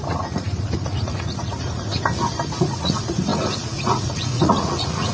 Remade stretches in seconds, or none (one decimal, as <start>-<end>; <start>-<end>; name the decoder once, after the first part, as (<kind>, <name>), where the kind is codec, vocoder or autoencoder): 0.0-1.9 (vocoder, Vocos); 2.6-5.1